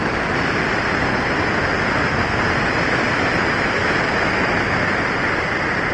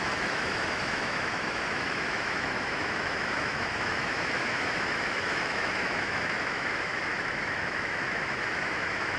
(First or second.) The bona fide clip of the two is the first